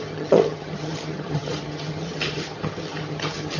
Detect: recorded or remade remade